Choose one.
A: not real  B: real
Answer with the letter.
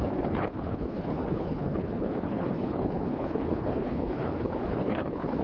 A